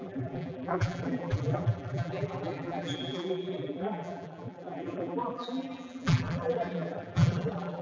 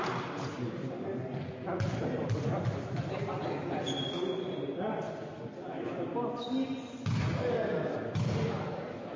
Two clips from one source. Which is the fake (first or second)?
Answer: first